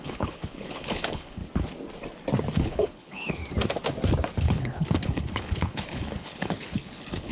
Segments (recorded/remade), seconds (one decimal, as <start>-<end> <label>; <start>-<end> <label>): 0.0-1.4 remade; 1.4-2.6 recorded; 2.6-3.4 remade; 3.4-4.4 recorded; 4.4-7.3 remade